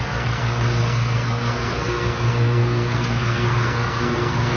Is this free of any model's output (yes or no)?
no